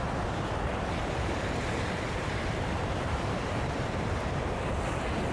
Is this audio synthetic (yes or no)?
yes